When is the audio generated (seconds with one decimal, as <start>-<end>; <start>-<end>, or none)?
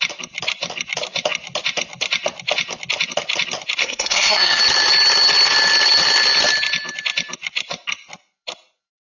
3.8-4.6